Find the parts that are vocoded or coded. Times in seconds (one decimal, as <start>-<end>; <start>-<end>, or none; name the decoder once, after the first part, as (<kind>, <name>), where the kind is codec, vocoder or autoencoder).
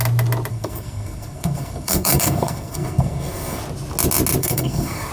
0.5-3.6 (codec, SNAC); 4.4-5.1